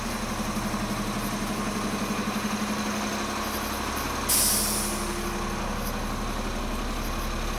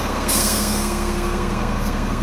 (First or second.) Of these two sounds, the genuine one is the first